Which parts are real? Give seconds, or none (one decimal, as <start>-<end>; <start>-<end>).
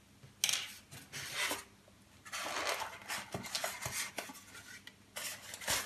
0.0-5.9